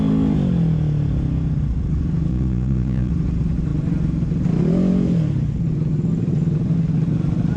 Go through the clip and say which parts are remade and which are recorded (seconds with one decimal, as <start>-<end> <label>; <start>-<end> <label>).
0.0-2.3 recorded; 2.3-3.1 remade; 3.1-7.6 recorded